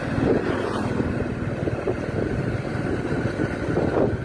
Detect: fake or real real